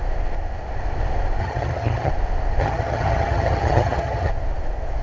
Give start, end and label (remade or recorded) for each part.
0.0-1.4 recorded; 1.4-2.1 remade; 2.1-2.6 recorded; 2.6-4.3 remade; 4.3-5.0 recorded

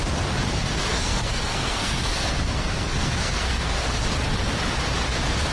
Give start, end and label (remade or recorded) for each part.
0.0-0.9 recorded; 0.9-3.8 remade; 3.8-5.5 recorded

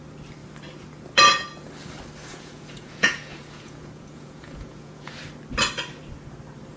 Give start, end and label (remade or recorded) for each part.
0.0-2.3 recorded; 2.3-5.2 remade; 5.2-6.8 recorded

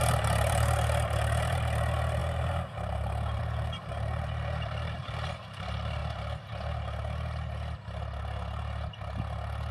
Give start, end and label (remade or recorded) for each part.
0.0-6.0 remade; 6.0-9.7 recorded